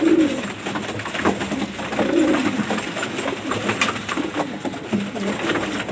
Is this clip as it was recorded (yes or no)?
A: yes